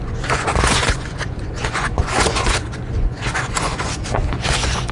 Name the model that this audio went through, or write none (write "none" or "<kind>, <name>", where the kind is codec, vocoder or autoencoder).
vocoder, Vocos